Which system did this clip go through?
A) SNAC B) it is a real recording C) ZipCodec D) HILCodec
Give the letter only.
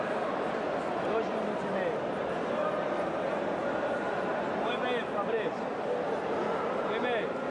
B